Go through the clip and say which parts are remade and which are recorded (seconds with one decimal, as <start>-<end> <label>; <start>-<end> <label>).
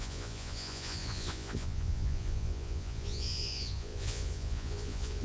0.0-5.2 remade